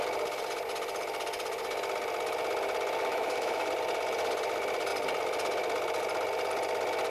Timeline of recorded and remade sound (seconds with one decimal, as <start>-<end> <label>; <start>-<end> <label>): 0.0-3.1 recorded; 3.1-3.7 remade; 3.7-7.1 recorded